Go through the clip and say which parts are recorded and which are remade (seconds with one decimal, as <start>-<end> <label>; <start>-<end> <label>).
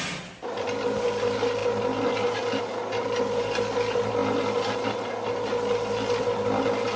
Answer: 0.0-7.0 recorded